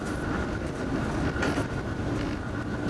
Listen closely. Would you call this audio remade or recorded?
recorded